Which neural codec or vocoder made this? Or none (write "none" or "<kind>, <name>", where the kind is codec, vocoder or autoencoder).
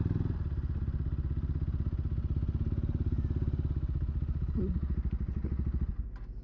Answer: none